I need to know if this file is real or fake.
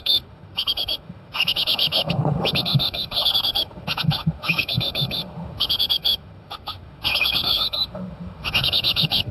fake